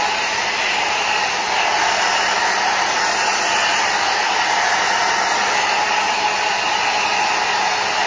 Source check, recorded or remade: recorded